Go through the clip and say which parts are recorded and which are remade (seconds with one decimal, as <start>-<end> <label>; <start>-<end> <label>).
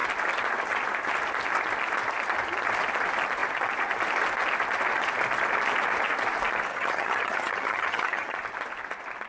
0.0-6.7 recorded; 6.7-8.4 remade; 8.4-9.3 recorded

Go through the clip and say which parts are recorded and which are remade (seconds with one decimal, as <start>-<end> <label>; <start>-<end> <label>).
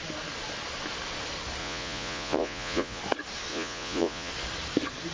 0.0-1.6 recorded; 1.6-3.0 remade; 3.0-3.5 recorded; 3.5-4.3 remade; 4.3-5.1 recorded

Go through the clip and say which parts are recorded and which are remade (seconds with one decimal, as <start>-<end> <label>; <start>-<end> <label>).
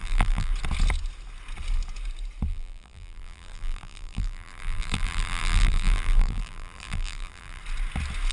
0.0-0.5 remade; 0.5-2.5 recorded; 2.5-7.6 remade; 7.6-8.3 recorded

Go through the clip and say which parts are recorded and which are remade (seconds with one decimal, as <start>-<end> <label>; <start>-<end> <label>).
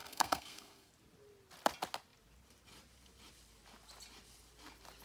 0.0-0.9 remade; 0.9-5.0 recorded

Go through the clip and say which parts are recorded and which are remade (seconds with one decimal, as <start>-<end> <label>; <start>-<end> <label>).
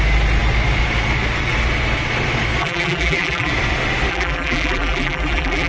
0.0-2.6 recorded; 2.6-3.5 remade; 3.5-4.1 recorded; 4.1-5.7 remade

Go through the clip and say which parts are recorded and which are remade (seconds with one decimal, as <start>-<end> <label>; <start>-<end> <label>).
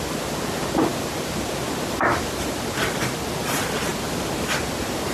0.0-5.1 recorded